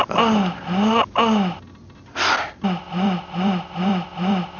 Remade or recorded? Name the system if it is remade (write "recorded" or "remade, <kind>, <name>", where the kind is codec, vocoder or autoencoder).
recorded